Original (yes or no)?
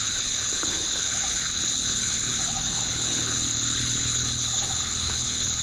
no